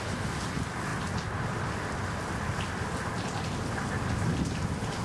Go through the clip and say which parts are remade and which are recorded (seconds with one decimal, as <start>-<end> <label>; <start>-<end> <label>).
0.0-5.0 recorded